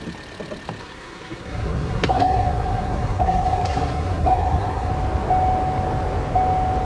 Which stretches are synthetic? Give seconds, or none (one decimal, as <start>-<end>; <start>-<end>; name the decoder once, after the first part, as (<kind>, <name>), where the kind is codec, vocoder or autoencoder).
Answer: 0.8-4.9 (codec, SNAC)